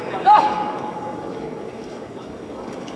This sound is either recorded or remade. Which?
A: remade